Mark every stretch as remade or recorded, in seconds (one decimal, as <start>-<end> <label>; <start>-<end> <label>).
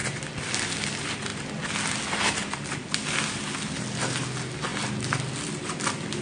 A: 0.0-4.7 recorded; 4.7-6.2 remade